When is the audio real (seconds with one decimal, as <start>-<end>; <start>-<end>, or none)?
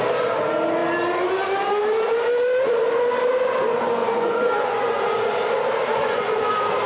0.0-4.0; 5.0-5.9; 6.5-6.9